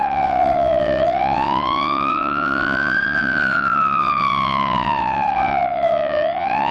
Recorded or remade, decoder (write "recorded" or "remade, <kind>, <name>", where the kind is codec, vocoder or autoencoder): remade, vocoder, WaveNeXt